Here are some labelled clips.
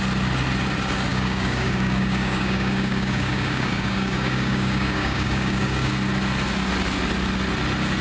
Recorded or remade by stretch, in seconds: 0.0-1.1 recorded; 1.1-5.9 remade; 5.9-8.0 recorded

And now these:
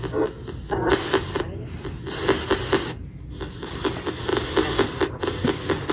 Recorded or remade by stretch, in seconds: 0.0-5.9 recorded

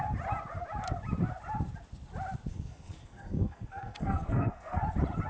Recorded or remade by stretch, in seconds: 0.0-2.5 recorded; 2.5-4.8 remade; 4.8-5.3 recorded

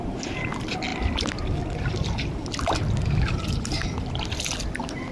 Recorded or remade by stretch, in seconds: 0.0-5.1 recorded

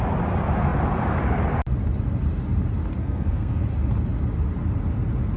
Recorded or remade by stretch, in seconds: 0.0-3.0 recorded; 3.0-3.6 remade; 3.6-5.4 recorded